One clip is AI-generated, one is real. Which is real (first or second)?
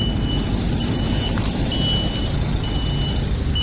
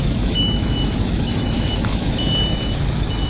first